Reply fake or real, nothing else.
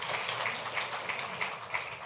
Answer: real